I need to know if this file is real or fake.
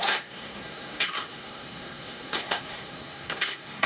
fake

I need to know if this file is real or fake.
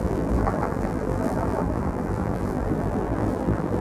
fake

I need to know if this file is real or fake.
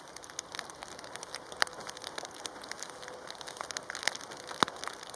real